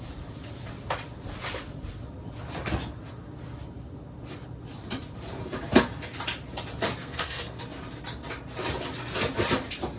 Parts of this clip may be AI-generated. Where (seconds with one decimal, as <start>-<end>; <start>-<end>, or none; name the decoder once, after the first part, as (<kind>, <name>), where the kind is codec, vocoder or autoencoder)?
7.0-7.6 (codec, SNAC)